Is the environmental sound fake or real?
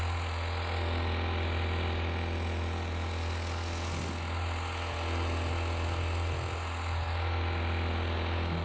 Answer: real